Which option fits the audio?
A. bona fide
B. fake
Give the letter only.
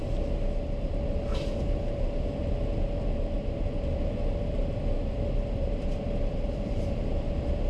A